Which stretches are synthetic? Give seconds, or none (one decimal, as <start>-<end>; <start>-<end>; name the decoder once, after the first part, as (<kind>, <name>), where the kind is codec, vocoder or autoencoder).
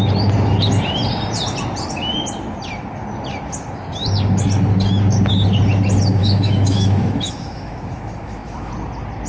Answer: 6.2-8.7 (autoencoder, DAC-VAE)